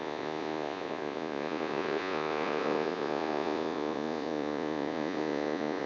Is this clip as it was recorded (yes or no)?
no